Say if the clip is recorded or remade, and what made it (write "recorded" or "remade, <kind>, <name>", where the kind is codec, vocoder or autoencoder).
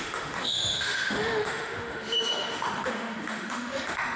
remade, autoencoder, DAC-VAE